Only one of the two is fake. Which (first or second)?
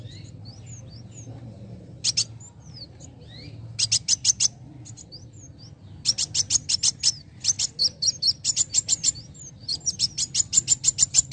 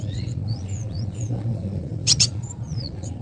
second